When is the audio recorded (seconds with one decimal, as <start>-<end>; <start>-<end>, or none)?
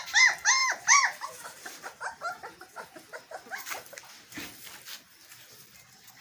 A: 0.0-0.6; 4.3-6.2